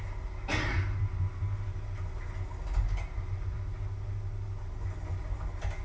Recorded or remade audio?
recorded